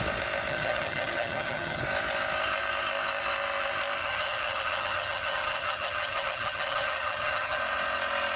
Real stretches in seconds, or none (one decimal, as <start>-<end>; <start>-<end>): 0.0-0.5; 1.8-4.0; 7.6-8.4